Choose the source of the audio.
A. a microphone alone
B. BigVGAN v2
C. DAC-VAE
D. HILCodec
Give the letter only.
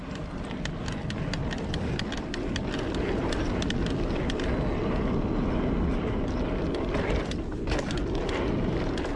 A